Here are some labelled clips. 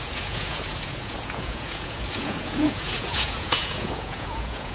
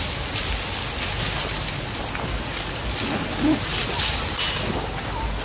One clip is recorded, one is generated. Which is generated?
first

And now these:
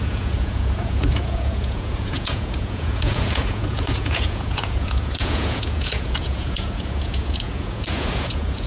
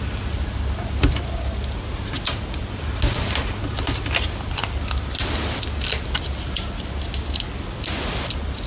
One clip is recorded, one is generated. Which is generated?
first